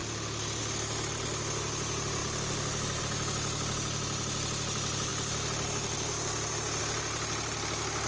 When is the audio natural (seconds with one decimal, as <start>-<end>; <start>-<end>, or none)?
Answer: 0.6-8.1